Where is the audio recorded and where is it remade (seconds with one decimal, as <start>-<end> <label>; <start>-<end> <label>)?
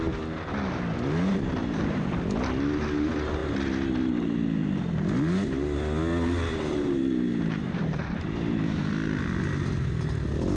0.0-1.6 recorded; 1.6-2.2 remade; 2.2-6.5 recorded; 6.5-8.8 remade; 8.8-10.6 recorded